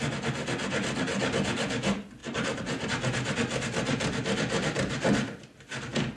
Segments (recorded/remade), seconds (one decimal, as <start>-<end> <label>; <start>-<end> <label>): 0.0-6.2 recorded